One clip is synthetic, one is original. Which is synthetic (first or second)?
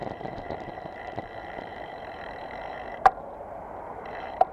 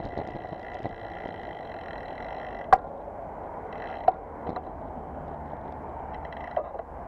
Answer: first